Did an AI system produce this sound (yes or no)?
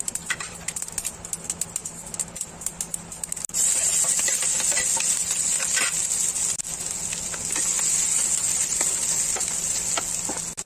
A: no